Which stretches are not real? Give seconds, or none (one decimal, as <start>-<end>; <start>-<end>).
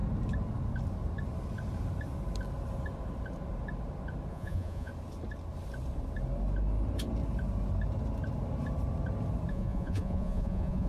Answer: 4.3-4.9; 9.5-10.9